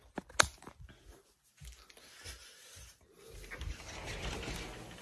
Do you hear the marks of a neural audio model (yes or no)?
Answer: no